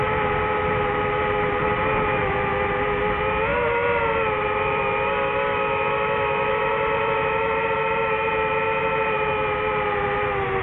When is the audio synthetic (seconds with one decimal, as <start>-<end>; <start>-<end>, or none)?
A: 6.5-8.3; 8.8-9.3